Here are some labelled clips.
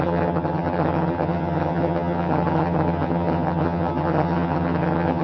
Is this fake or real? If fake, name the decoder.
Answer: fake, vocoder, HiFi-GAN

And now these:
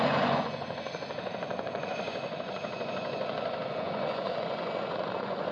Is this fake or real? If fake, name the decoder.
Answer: fake, vocoder, Vocos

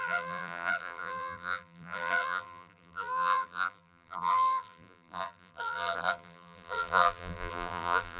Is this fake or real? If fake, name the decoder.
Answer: fake, vocoder, BigVGAN v2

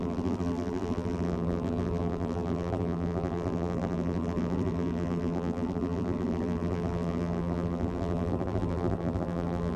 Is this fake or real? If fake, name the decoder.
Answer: fake, vocoder, BigVGAN v2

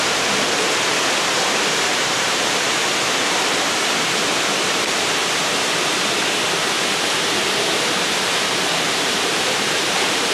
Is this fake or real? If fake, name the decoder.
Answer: fake, vocoder, BigVGAN v2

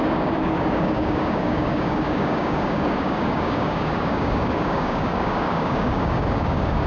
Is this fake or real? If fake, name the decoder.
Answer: fake, codec, DAC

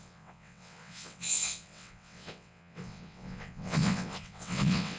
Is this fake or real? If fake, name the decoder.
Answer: fake, vocoder, WaveNeXt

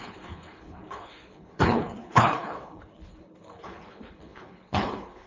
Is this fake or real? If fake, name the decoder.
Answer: fake, codec, HILCodec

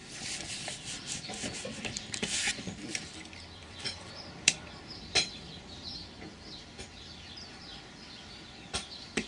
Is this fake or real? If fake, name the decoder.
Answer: fake, vocoder, BigVGAN v2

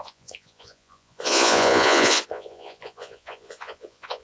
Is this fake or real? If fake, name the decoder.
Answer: fake, vocoder, Vocos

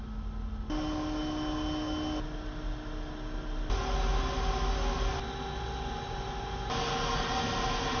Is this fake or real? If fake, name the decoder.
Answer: real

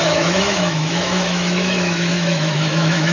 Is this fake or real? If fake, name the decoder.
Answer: fake, autoencoder, DAC-VAE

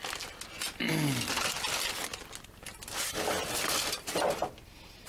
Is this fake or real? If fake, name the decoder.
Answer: real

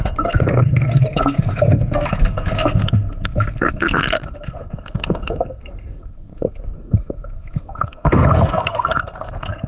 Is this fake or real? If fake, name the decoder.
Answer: fake, codec, SNAC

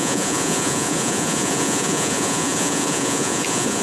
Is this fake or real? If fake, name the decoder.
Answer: fake, vocoder, Vocos